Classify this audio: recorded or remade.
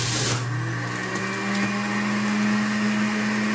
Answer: recorded